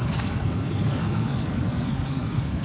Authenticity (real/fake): fake